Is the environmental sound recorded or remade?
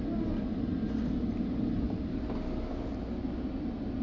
recorded